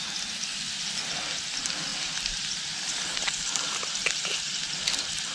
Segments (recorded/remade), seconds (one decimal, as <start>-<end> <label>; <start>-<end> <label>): 0.0-1.9 recorded; 1.9-3.5 remade; 3.5-4.0 recorded; 4.0-5.3 remade